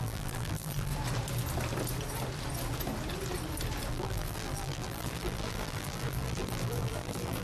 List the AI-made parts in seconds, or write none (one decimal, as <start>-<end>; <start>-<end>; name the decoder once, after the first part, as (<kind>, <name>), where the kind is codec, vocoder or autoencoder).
0.0-0.9 (vocoder, BigVGAN v2); 3.9-7.4